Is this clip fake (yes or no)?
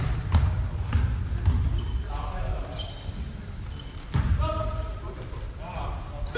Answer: yes